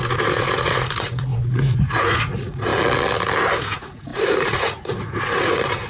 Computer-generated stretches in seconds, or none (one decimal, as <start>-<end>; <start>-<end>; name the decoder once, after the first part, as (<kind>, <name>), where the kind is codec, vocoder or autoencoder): 0.0-2.7 (vocoder, Vocos); 3.6-5.9